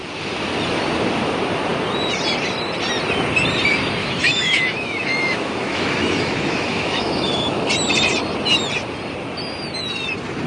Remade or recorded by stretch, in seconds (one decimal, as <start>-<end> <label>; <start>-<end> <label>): 0.0-4.0 recorded; 4.0-7.7 remade; 7.7-10.5 recorded